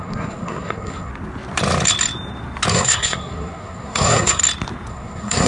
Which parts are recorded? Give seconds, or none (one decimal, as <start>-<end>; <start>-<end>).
1.1-2.7; 4.4-4.9